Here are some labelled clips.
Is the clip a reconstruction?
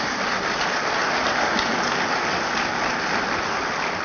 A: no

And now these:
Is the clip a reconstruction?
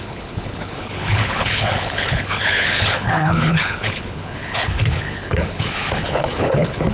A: yes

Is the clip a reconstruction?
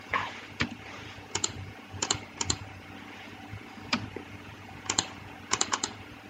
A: yes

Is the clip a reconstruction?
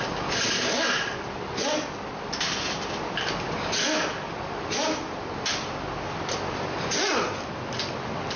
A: no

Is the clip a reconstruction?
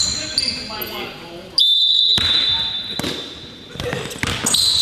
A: no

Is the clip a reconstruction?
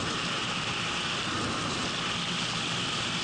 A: yes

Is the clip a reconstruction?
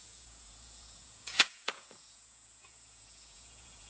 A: yes